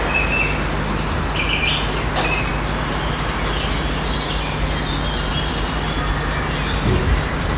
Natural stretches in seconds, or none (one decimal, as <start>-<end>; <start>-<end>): 0.0-7.6